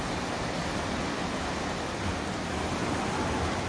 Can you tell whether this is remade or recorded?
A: recorded